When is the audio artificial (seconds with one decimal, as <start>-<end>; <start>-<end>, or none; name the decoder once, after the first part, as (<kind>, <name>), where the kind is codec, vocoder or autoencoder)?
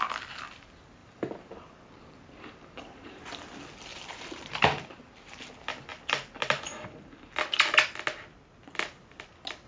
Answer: 1.0-3.2 (vocoder, BigVGAN v2); 3.9-5.5